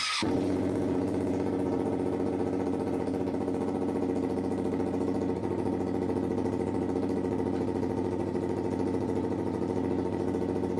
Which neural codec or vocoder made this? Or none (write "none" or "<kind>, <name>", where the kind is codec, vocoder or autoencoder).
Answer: vocoder, Vocos